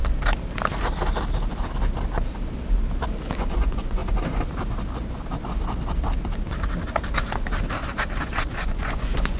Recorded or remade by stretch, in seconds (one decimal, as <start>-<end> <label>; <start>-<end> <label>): 0.0-3.4 recorded; 3.4-4.0 remade; 4.0-8.2 recorded; 8.2-9.4 remade